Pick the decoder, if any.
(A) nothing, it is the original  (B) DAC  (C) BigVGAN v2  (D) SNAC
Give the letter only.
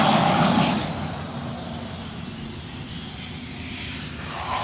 A